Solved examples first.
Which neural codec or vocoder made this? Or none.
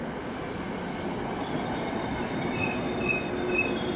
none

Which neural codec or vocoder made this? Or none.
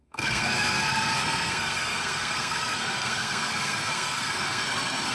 codec, SNAC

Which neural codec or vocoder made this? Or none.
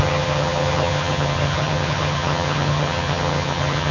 vocoder, HiFi-GAN